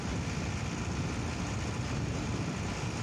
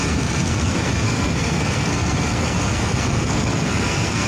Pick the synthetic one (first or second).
second